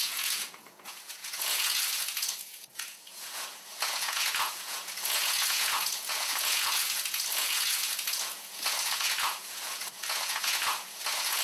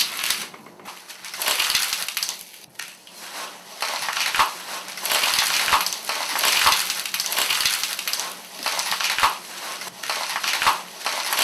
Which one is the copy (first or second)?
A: first